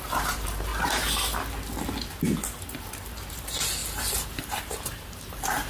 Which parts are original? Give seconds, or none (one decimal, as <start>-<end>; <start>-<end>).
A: 0.7-3.3